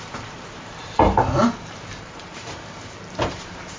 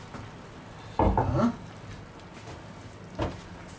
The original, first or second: second